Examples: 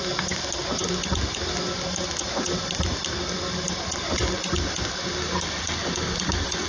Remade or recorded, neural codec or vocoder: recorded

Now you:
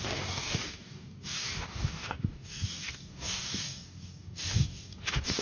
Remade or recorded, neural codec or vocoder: remade, codec, DAC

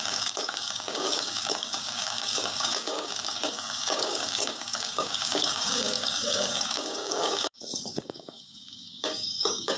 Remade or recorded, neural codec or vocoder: remade, codec, DAC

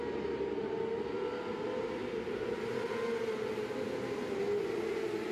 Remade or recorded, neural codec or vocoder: recorded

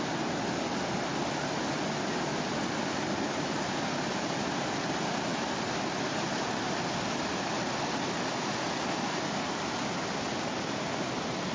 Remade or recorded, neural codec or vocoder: recorded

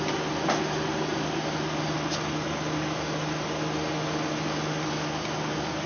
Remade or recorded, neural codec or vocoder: recorded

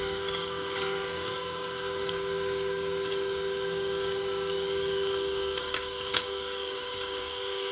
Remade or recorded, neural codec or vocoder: remade, codec, DAC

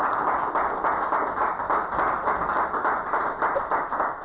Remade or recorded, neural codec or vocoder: recorded